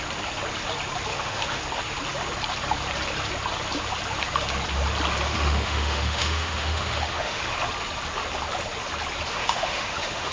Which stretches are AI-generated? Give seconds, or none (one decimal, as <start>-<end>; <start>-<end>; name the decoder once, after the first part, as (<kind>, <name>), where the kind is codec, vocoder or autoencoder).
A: 1.1-1.6 (autoencoder, DAC-VAE); 5.3-7.4; 9.3-10.3